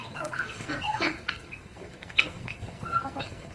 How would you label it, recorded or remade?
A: remade